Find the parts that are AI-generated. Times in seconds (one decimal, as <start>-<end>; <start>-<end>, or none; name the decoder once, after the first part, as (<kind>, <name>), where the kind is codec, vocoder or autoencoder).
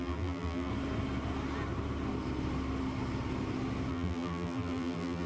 0.0-0.7 (vocoder, BigVGAN v2); 3.9-5.3